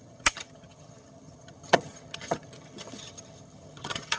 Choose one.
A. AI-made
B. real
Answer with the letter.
A